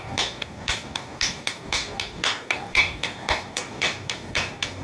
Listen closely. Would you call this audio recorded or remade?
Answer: remade